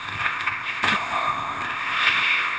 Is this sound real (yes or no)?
no